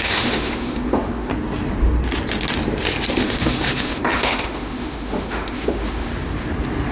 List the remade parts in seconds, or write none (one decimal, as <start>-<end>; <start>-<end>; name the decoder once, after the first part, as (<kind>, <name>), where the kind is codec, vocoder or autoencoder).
0.0-1.3 (autoencoder, DAC-VAE); 3.2-6.1